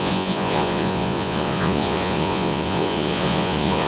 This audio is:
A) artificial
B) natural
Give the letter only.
A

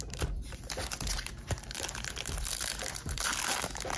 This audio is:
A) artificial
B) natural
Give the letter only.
A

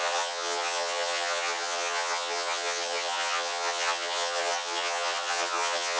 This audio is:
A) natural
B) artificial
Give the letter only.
B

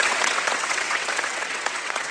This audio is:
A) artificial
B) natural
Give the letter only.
A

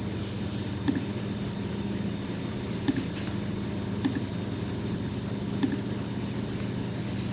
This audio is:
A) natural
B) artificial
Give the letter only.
A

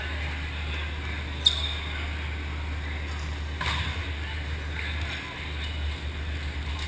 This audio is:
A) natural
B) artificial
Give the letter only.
A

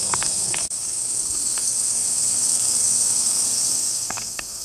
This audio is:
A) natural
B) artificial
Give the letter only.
B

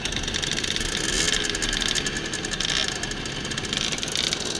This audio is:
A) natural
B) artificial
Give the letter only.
A